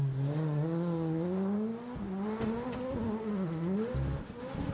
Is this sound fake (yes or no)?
no